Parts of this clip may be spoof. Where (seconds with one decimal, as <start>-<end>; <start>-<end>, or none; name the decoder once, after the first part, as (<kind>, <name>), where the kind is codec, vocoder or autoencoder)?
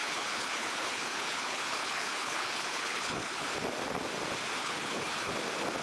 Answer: 0.0-3.5 (codec, HILCodec); 4.6-5.3